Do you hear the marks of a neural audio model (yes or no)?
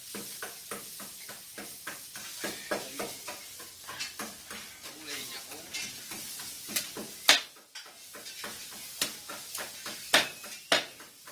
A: no